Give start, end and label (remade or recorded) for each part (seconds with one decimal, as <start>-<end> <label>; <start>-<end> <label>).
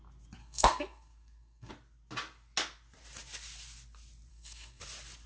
0.0-0.4 recorded; 0.4-1.7 remade; 1.7-4.3 recorded; 4.3-4.8 remade; 4.8-5.3 recorded